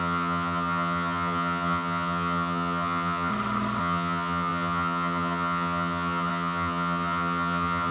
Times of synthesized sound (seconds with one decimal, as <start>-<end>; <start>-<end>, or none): 0.0-3.3; 3.8-7.9